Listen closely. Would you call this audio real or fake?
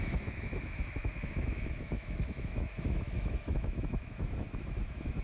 fake